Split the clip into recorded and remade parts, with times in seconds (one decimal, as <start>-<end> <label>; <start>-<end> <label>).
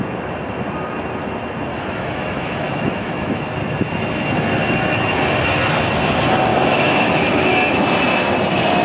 0.0-1.7 recorded; 1.7-3.4 remade; 3.4-6.5 recorded; 6.5-7.5 remade; 7.5-8.8 recorded